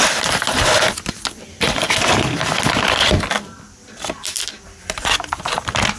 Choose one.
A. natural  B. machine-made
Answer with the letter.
B